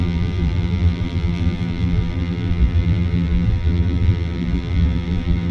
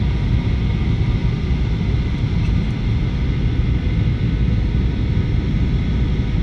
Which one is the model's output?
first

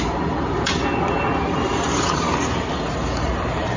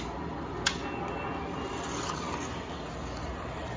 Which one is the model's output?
first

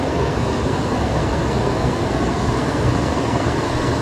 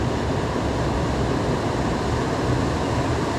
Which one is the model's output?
first